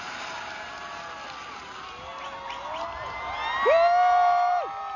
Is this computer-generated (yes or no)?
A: no